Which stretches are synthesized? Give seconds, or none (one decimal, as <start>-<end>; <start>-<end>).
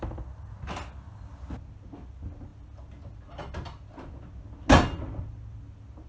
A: none